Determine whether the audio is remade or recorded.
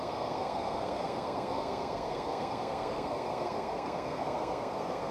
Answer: remade